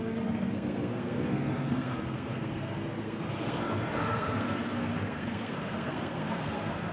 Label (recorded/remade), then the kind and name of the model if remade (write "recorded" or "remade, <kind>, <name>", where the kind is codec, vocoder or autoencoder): remade, codec, SNAC